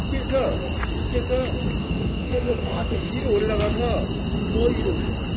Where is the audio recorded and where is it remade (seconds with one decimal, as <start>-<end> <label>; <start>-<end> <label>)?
0.0-1.8 recorded; 1.8-3.1 remade; 3.1-5.4 recorded